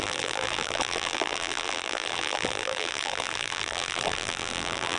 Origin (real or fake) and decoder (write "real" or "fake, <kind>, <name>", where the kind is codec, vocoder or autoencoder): fake, vocoder, BigVGAN v2